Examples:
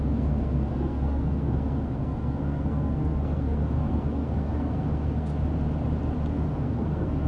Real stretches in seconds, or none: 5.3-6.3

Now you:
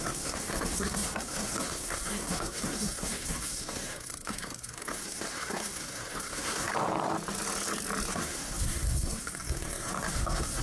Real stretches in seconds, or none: 6.7-8.1

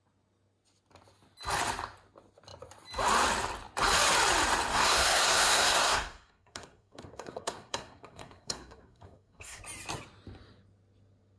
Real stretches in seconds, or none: 0.0-4.7; 9.6-11.4

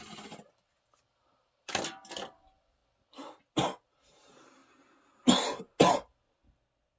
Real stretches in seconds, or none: 0.0-7.0

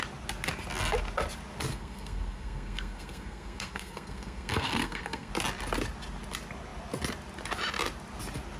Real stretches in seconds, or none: 0.0-1.7; 5.3-8.6

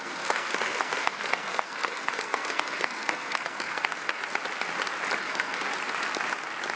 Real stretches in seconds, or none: 4.2-5.2; 5.7-6.8

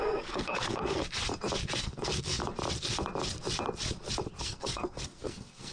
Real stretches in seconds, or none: 1.0-1.8; 2.4-4.4